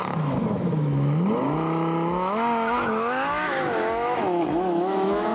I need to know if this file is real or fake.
fake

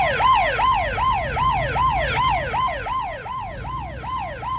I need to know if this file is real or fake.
real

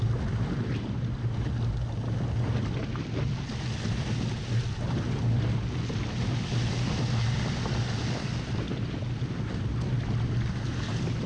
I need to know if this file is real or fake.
real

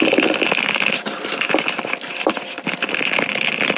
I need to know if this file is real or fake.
real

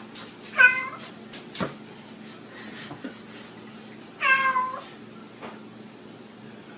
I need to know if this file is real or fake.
real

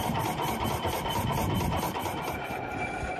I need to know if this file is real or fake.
fake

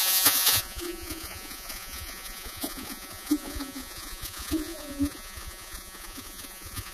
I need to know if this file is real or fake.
fake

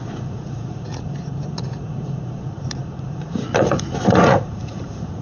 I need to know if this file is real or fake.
fake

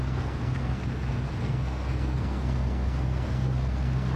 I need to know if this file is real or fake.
fake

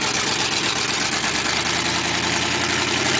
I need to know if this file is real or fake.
real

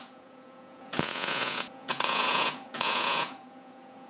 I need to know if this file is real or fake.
fake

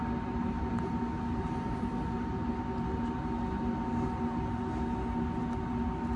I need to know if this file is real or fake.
real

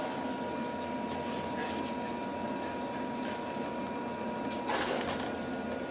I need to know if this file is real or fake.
real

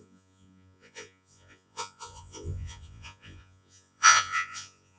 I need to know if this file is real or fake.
fake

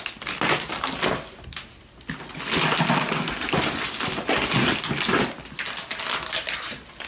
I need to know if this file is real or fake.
real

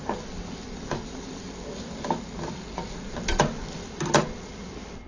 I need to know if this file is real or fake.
real